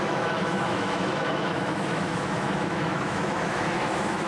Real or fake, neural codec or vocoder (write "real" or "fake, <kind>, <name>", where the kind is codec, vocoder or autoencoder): fake, autoencoder, DAC-VAE